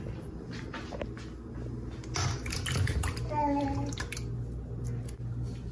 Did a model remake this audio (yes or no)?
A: no